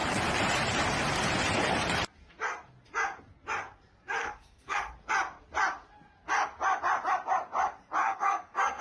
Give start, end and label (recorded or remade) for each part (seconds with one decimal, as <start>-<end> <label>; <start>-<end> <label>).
0.0-4.2 recorded; 4.2-4.9 remade; 4.9-8.0 recorded; 8.0-8.8 remade